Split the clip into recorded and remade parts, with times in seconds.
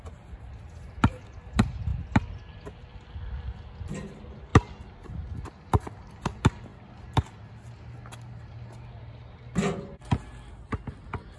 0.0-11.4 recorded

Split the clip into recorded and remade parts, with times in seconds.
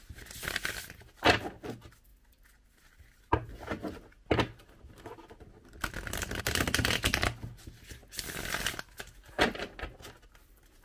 0.0-10.8 recorded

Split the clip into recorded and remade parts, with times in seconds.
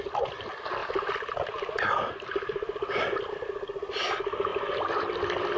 0.0-5.6 recorded